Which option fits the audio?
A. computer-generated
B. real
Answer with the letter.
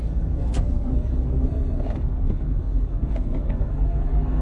A